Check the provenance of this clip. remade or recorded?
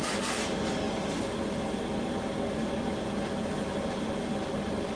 recorded